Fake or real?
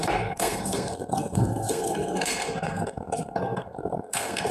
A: fake